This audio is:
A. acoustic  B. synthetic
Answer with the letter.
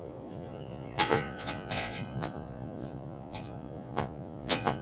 B